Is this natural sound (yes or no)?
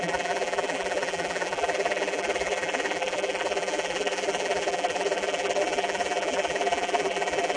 no